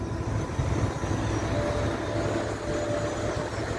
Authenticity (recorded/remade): recorded